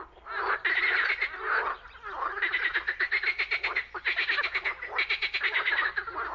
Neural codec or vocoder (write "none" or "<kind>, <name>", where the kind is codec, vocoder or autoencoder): none